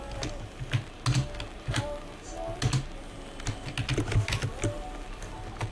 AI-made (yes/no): no